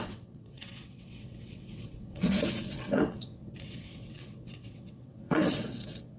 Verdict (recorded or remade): remade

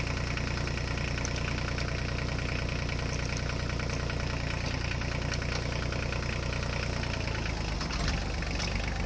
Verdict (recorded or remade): recorded